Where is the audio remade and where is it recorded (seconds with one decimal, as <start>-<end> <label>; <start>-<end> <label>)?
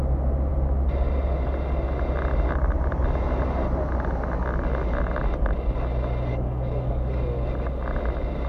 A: 0.0-6.3 recorded; 6.3-7.2 remade; 7.2-8.5 recorded